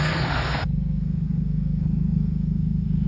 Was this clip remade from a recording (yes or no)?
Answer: yes